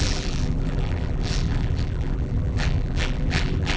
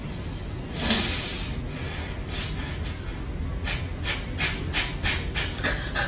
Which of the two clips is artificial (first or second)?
first